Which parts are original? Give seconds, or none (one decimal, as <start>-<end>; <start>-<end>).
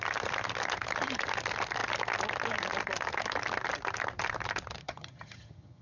0.0-4.8